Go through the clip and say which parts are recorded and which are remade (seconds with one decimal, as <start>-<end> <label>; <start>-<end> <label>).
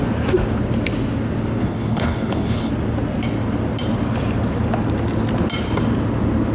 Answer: 0.0-1.6 recorded; 1.6-2.7 remade; 2.7-6.5 recorded